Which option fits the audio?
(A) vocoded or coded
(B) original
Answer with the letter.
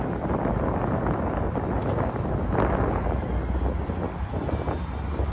B